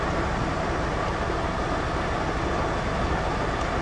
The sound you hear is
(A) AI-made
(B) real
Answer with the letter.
B